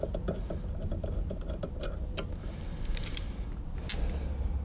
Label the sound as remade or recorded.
recorded